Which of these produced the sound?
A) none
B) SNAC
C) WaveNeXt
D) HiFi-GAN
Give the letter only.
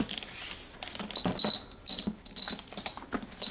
A